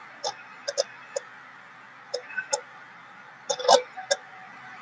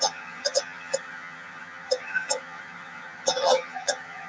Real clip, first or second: first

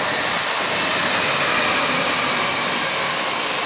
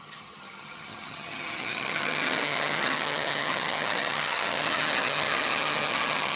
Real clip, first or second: first